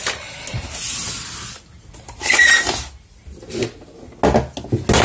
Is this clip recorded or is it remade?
recorded